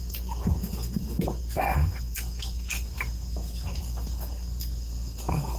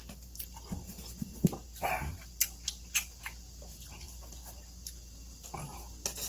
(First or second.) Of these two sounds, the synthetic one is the first